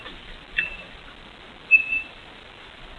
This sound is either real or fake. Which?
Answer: real